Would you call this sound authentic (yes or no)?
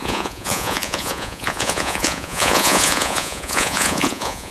no